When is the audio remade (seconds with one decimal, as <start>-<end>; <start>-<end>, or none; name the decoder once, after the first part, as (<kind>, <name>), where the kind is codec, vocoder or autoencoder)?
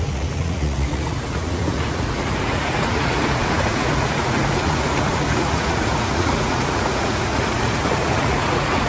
0.0-8.9 (vocoder, Vocos)